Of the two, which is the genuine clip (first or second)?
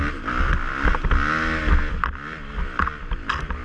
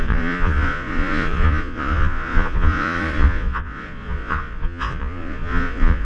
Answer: first